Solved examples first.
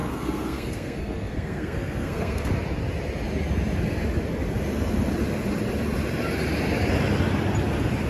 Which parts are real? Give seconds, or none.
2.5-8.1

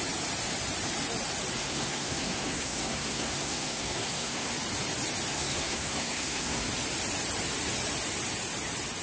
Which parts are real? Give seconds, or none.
0.0-1.6; 4.5-5.3; 6.7-9.0

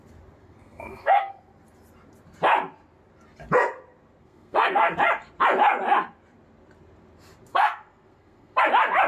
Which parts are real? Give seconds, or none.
0.0-0.4; 1.4-4.2; 4.9-7.5; 8.6-9.1

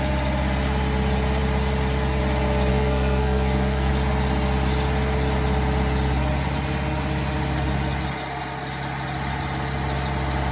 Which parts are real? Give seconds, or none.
0.0-2.7; 3.9-10.5

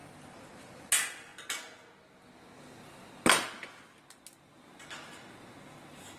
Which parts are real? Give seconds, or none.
0.0-6.2